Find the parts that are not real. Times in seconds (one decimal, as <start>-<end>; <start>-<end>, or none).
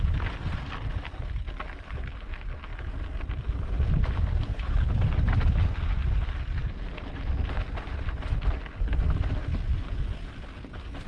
4.5-5.0